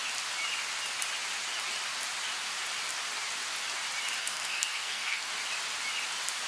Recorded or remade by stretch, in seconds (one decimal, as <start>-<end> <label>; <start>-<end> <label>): 0.0-4.2 recorded; 4.2-5.3 remade; 5.3-6.5 recorded